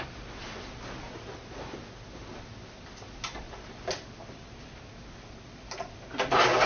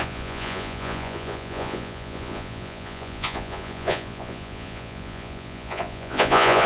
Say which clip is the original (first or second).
first